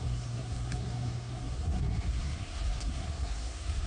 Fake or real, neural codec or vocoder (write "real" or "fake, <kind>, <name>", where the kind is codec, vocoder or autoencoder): fake, codec, SNAC